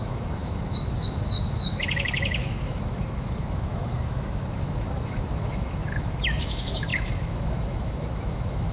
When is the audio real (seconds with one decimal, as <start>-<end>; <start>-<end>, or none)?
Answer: none